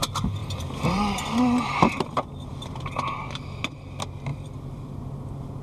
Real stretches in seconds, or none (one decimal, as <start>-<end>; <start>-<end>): 0.0-0.4; 3.2-4.3; 5.0-5.6